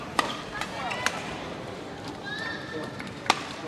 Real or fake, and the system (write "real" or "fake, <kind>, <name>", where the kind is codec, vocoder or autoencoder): fake, vocoder, BigVGAN v2